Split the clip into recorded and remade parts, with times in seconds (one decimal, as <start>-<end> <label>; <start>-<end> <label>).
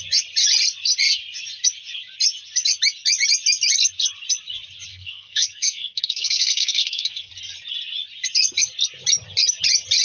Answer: 0.0-4.9 recorded; 4.9-7.3 remade; 7.3-10.0 recorded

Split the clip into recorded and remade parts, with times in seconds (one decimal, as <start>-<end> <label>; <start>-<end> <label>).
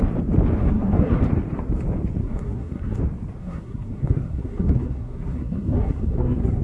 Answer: 0.0-0.6 recorded; 0.6-1.2 remade; 1.2-2.2 recorded; 2.2-3.0 remade; 3.0-3.4 recorded; 3.4-6.6 remade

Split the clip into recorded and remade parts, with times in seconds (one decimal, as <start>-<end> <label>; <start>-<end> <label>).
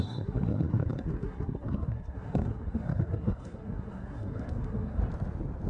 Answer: 0.0-5.0 remade; 5.0-5.7 recorded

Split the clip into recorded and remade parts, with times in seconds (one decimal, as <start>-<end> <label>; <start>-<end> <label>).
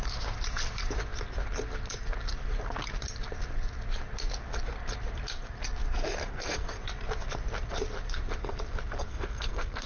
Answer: 0.0-6.2 recorded; 6.2-6.8 remade; 6.8-9.1 recorded; 9.1-9.9 remade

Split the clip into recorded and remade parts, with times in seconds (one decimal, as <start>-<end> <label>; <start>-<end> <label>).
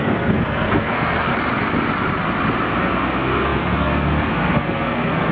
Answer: 0.0-1.3 remade; 1.3-2.8 recorded; 2.8-5.3 remade